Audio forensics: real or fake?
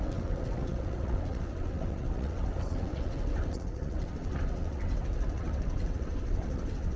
fake